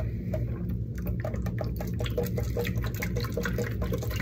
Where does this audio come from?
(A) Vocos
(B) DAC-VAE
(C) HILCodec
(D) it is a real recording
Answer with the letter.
D